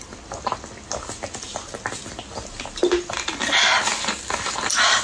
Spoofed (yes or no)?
no